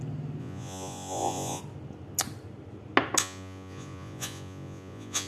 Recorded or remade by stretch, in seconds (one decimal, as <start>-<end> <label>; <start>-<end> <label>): 0.0-0.4 recorded; 0.4-1.6 remade; 1.6-3.2 recorded; 3.2-5.3 remade